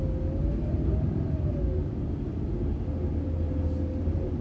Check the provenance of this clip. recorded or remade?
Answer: recorded